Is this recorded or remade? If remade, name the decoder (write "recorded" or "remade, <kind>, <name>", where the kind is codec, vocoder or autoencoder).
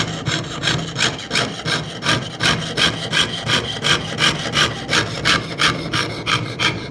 recorded